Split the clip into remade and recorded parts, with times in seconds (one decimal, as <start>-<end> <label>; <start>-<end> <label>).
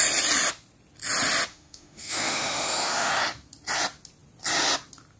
0.0-1.5 recorded; 1.5-3.1 remade; 3.1-5.2 recorded